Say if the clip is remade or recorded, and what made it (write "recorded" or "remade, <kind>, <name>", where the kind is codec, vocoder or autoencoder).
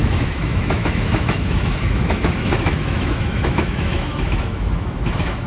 remade, autoencoder, DAC-VAE